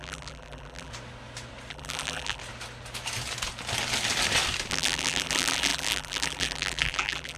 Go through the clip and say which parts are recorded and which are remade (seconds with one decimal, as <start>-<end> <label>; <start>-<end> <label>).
0.0-0.9 remade; 0.9-1.7 recorded; 1.7-2.4 remade; 2.4-4.7 recorded; 4.7-7.4 remade